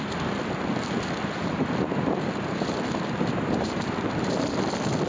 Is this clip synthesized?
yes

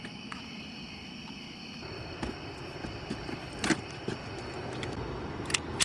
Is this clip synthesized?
no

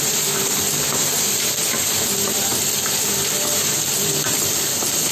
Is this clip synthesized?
yes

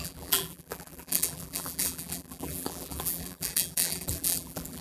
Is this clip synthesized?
yes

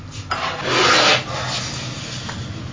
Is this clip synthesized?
no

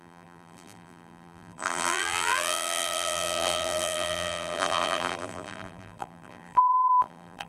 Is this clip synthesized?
yes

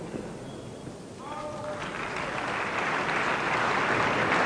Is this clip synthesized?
no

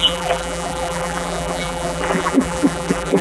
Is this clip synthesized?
yes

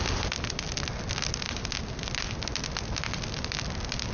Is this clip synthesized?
no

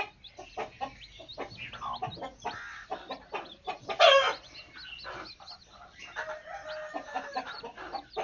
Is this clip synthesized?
no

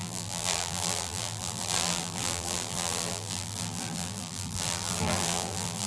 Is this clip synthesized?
yes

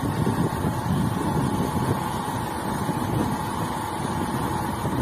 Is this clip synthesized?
no